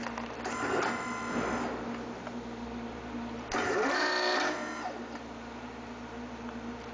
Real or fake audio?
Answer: real